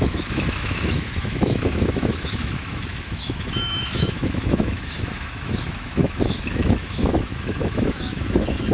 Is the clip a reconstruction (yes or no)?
yes